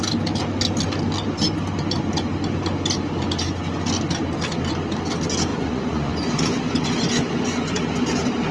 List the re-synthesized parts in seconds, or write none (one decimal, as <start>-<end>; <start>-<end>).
5.5-7.9